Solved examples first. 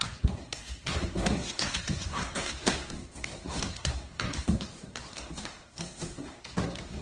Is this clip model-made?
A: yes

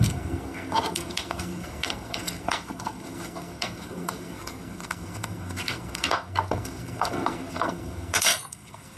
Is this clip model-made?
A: yes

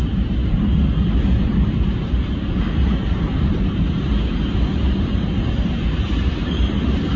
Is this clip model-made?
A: yes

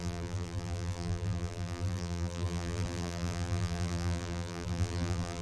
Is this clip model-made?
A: yes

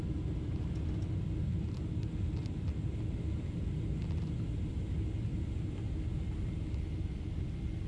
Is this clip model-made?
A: no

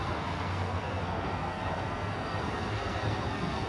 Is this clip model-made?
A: yes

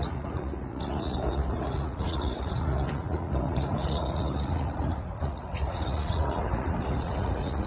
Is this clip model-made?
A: yes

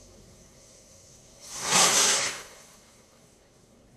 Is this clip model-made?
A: yes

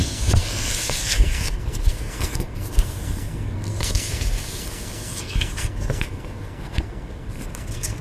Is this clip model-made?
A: yes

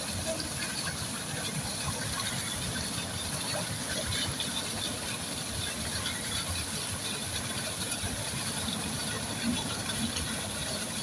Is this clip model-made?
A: no